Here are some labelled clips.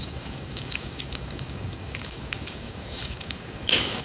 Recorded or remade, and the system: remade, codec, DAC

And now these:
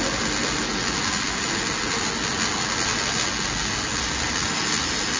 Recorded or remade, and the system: recorded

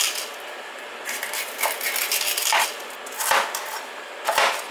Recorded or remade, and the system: recorded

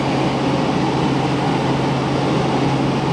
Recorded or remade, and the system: recorded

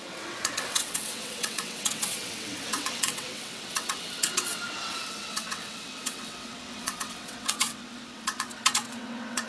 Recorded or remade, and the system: remade, vocoder, WaveNeXt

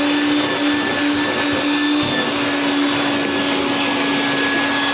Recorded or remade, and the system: recorded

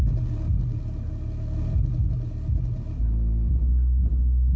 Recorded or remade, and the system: recorded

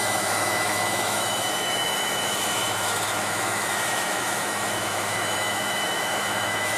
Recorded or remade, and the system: remade, autoencoder, DAC-VAE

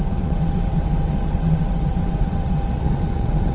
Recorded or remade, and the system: remade, vocoder, WaveNeXt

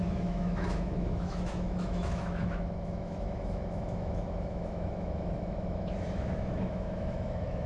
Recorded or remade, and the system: remade, autoencoder, DAC-VAE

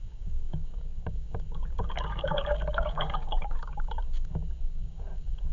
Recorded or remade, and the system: remade, codec, DAC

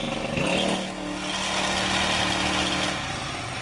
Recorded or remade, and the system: recorded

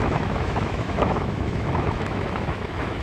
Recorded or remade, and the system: remade, autoencoder, DAC-VAE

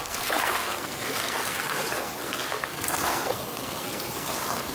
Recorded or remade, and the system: remade, codec, SNAC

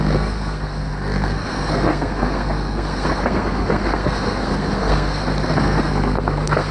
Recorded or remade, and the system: remade, codec, SNAC